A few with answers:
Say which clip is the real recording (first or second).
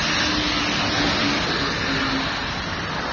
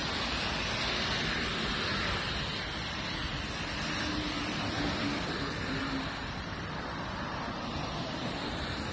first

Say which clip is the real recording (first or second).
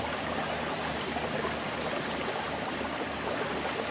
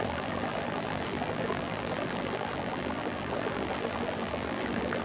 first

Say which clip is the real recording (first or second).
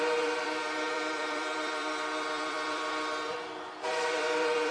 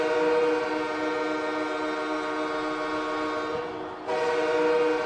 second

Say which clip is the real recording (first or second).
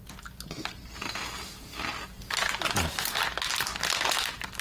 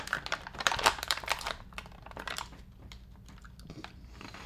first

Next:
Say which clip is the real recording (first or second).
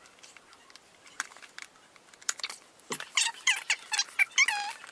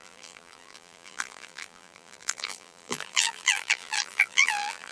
first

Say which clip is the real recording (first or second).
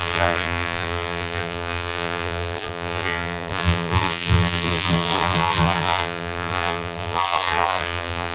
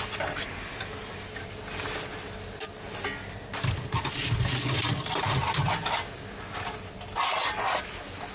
second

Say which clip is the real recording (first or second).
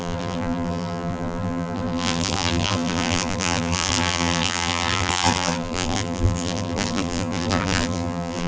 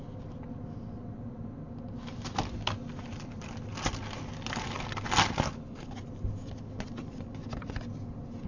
second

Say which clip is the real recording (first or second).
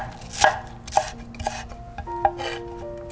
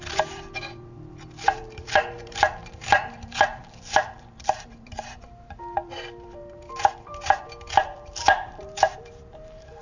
first